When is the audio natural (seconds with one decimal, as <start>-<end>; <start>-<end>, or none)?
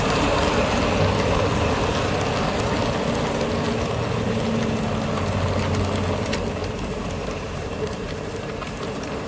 0.0-6.6